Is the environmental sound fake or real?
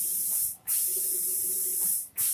fake